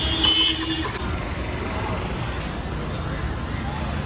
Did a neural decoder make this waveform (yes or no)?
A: no